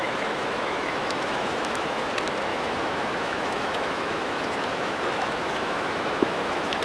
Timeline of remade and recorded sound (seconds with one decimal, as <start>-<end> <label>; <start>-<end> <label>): 0.0-2.1 remade; 2.1-2.5 recorded; 2.5-6.8 remade